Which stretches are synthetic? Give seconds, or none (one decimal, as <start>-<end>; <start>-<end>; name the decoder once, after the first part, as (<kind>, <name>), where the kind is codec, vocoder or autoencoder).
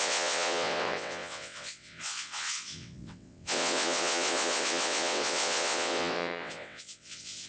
0.0-7.5 (vocoder, WaveNeXt)